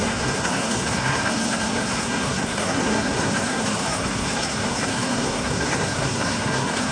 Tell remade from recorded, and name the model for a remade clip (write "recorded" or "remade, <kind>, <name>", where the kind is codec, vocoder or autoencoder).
remade, codec, SNAC